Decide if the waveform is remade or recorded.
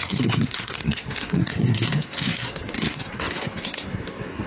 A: remade